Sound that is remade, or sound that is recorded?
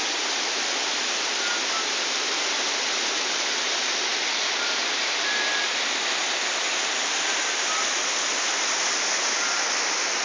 recorded